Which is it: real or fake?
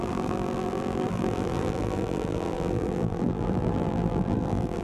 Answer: fake